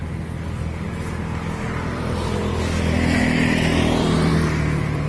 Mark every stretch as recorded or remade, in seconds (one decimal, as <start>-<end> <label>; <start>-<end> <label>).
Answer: 0.0-5.1 recorded